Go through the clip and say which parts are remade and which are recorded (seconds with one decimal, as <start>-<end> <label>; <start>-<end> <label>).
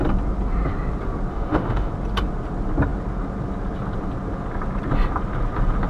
0.0-1.3 recorded; 1.3-1.9 remade; 1.9-5.9 recorded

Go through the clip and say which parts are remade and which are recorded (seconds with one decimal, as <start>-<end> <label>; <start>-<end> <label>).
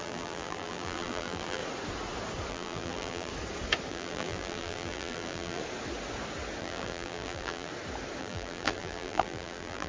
0.0-1.6 remade; 1.6-2.5 recorded; 2.5-3.3 remade; 3.3-3.9 recorded; 3.9-5.6 remade; 5.6-6.6 recorded; 6.6-7.7 remade; 7.7-8.2 recorded; 8.2-9.9 remade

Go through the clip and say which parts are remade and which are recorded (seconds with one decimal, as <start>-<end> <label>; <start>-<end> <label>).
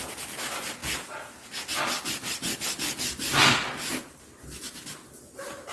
0.0-5.7 recorded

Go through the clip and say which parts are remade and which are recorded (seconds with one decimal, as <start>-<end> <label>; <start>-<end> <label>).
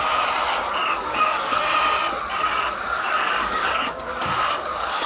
0.0-0.8 recorded; 0.8-1.6 remade; 1.6-2.5 recorded; 2.5-5.1 remade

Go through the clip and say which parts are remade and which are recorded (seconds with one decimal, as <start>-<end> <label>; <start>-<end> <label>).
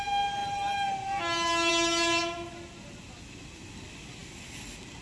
0.0-5.0 recorded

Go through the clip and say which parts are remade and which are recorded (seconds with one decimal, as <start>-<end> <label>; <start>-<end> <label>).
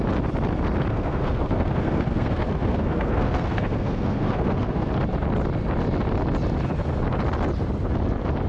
0.0-0.9 recorded; 0.9-4.9 remade; 4.9-8.5 recorded